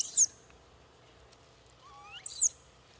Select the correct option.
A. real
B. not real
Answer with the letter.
A